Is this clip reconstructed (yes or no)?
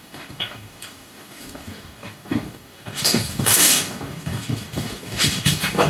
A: yes